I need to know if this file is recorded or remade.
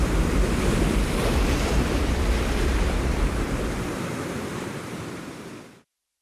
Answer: remade